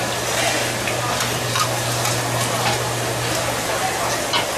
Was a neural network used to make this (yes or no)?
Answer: no